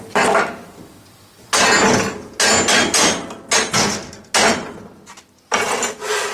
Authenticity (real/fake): real